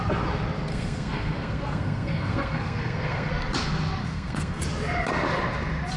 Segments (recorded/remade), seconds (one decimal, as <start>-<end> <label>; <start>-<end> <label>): 0.0-0.7 recorded; 0.7-3.3 remade; 3.3-4.0 recorded; 4.0-4.6 remade; 4.6-6.0 recorded